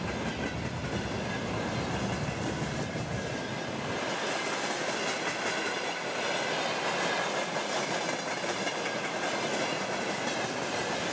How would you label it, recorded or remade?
recorded